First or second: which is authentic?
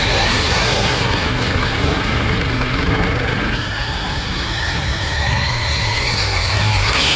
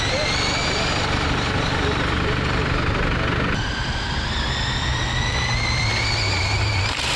second